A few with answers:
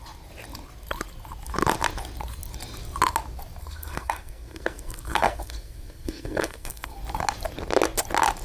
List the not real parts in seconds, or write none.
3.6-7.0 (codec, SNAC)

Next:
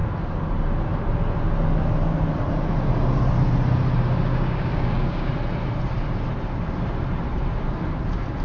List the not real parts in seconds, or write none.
4.3-5.3 (codec, DAC)

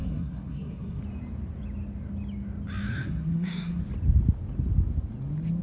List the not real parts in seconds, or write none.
0.0-1.0 (codec, SNAC); 2.9-3.8

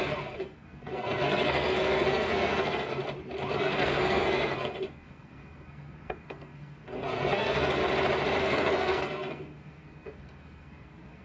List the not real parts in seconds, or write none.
0.0-3.0 (codec, SNAC); 3.5-7.8; 8.4-11.2

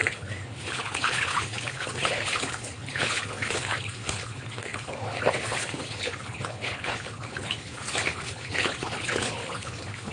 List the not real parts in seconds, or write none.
0.0-10.1 (codec, HILCodec)

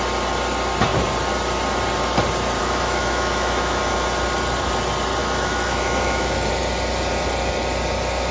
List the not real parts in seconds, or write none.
2.6-3.8 (autoencoder, DAC-VAE); 5.2-6.5

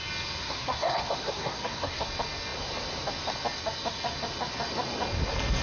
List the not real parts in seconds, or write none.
0.4-2.0 (codec, SNAC)

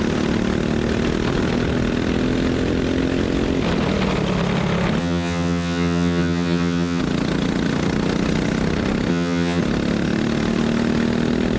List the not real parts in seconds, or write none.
5.0-7.0 (vocoder, HiFi-GAN); 9.1-9.6